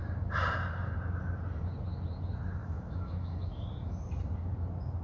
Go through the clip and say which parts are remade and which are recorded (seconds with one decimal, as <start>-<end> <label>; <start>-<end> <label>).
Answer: 0.0-2.6 recorded; 2.6-3.7 remade; 3.7-5.0 recorded